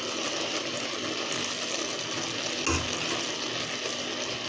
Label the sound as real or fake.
real